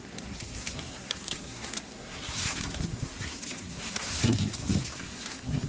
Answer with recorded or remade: remade